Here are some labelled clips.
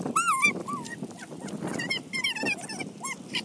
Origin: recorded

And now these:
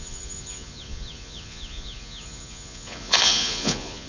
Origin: remade